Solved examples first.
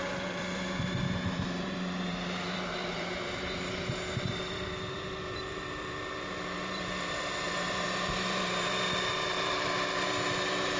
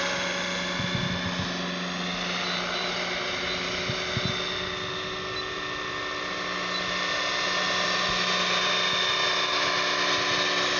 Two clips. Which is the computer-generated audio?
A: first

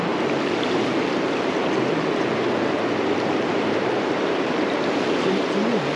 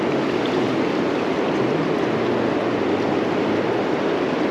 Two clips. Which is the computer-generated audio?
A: first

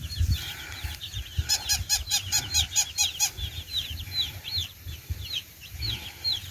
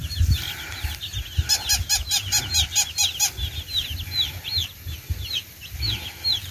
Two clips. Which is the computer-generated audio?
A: first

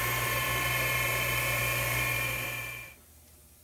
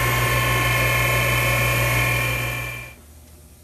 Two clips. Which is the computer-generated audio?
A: first